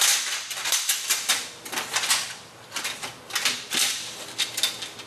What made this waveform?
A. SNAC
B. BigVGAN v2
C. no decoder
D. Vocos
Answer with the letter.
C